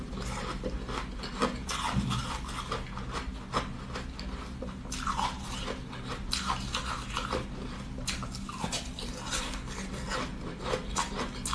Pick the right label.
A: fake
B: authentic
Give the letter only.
B